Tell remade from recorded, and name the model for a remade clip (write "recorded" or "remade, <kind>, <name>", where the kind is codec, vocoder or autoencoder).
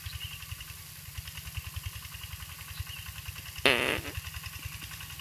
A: recorded